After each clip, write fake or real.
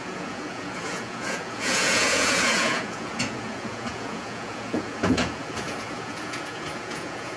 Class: fake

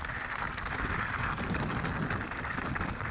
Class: real